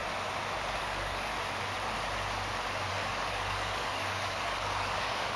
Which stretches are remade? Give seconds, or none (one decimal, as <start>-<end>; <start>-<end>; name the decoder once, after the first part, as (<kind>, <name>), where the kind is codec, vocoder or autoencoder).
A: 0.8-1.3 (codec, DAC); 2.9-5.4